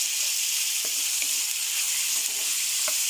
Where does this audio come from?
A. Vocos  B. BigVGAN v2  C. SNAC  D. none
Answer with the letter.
D